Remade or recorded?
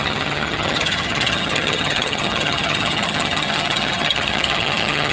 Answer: remade